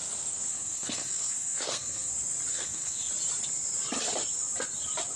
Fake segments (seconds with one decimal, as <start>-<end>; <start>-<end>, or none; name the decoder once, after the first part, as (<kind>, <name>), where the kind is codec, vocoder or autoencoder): 0.5-2.1 (codec, SNAC); 2.5-3.1